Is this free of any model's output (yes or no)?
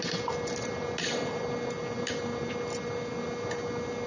yes